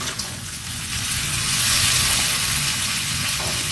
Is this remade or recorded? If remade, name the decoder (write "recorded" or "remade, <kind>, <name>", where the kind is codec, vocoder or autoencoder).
remade, vocoder, Vocos